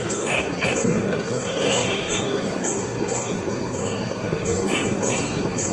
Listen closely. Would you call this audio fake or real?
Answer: fake